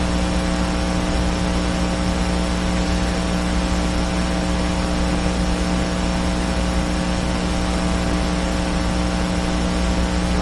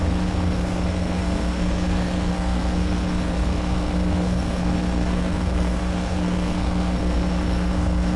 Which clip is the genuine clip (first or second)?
first